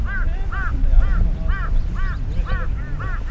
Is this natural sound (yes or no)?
yes